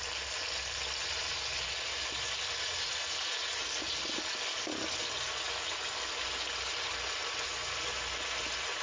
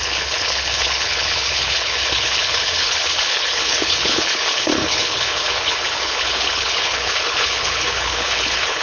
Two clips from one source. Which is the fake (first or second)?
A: second